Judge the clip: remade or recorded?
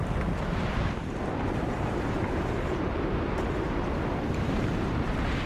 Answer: remade